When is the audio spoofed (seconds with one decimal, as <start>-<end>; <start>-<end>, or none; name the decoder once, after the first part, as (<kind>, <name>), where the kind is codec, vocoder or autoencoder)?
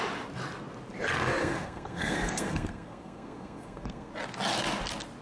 1.4-4.1 (codec, SNAC)